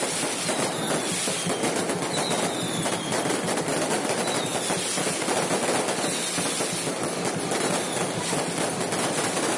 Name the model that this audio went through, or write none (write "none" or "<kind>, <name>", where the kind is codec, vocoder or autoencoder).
none